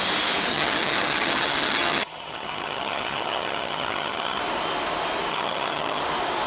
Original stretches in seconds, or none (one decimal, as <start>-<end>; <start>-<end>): 0.0-0.5; 4.4-5.3; 6.0-6.5